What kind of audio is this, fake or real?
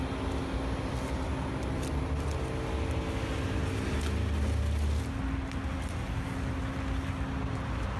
real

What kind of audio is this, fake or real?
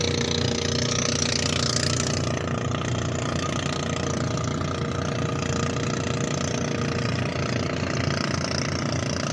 real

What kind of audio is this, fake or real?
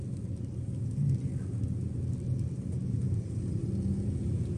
real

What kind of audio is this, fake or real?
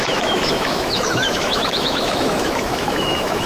fake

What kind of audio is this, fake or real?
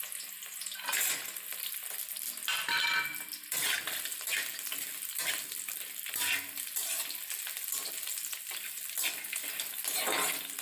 real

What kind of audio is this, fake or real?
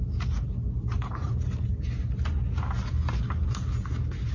real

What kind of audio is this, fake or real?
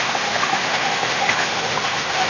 fake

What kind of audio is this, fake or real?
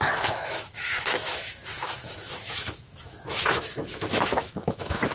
fake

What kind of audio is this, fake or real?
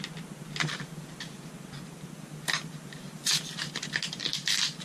real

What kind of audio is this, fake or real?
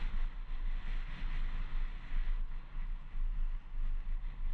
real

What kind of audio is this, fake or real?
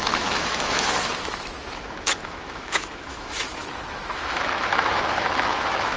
fake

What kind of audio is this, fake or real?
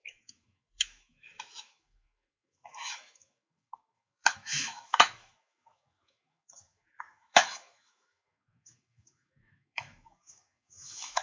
fake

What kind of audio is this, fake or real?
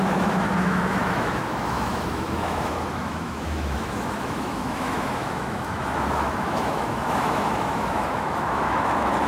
fake